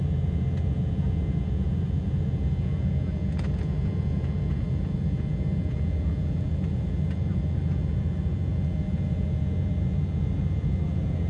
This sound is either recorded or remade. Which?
remade